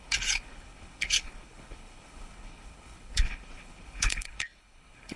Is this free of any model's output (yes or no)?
no